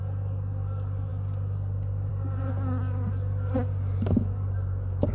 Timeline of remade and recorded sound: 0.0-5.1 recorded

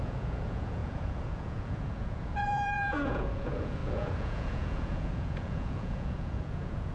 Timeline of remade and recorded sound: 0.0-6.9 remade

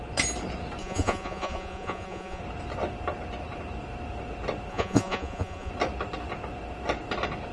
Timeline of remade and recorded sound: 0.0-0.8 recorded; 0.8-2.4 remade; 2.4-4.7 recorded; 4.7-5.7 remade; 5.7-7.5 recorded

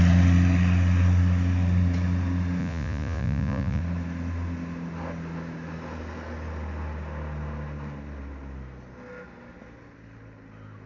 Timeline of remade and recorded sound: 0.0-2.6 recorded; 2.6-3.8 remade; 3.8-10.9 recorded

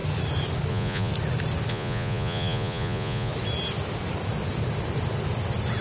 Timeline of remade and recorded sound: 0.0-0.7 recorded; 0.7-1.1 remade; 1.1-1.7 recorded; 1.7-3.3 remade; 3.3-5.8 recorded

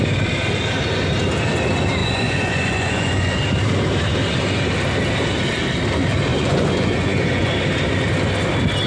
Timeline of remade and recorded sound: 0.0-2.0 recorded; 2.0-3.4 remade; 3.4-6.3 recorded; 6.3-7.5 remade; 7.5-8.9 recorded

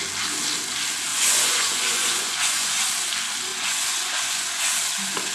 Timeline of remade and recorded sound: 0.0-1.1 recorded; 1.1-2.8 remade; 2.8-3.5 recorded; 3.5-4.8 remade; 4.8-5.3 recorded

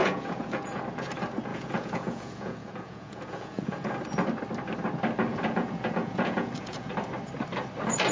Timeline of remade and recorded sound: 0.0-0.8 remade; 0.8-1.5 recorded; 1.5-3.9 remade; 3.9-5.3 recorded; 5.3-6.9 remade; 6.9-8.1 recorded